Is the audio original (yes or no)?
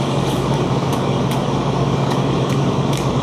no